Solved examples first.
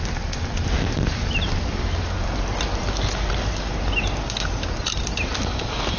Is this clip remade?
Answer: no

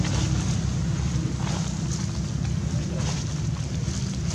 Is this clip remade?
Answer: no